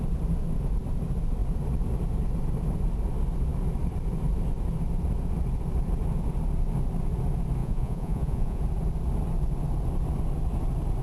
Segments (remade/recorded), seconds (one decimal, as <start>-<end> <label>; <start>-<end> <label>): 0.0-7.6 recorded; 7.6-8.6 remade; 8.6-11.0 recorded

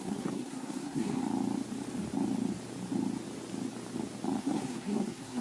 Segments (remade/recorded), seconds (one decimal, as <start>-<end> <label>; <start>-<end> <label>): 0.0-1.2 remade; 1.2-4.4 recorded; 4.4-5.4 remade

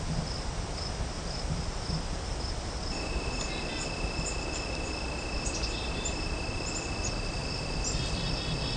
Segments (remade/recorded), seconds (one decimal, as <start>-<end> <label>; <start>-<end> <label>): 0.0-7.4 recorded; 7.4-8.0 remade; 8.0-8.8 recorded

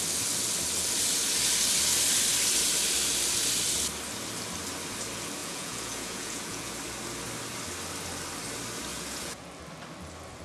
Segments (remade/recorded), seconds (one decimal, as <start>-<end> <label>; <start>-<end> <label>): 0.0-5.4 recorded; 5.4-6.7 remade; 6.7-8.9 recorded; 8.9-9.5 remade; 9.5-10.4 recorded

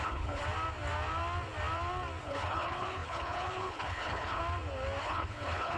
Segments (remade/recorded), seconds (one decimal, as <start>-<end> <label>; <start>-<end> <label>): 0.0-0.4 remade; 0.4-2.2 recorded; 2.2-4.4 remade; 4.4-5.0 recorded; 5.0-5.8 remade

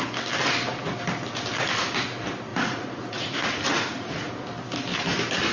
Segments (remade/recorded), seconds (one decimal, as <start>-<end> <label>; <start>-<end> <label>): 0.0-2.5 recorded; 2.5-4.3 remade; 4.3-5.5 recorded